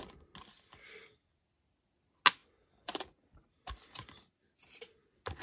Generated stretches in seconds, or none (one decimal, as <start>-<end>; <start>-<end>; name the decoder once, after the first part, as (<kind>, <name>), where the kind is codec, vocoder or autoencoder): 2.4-3.5 (vocoder, BigVGAN v2)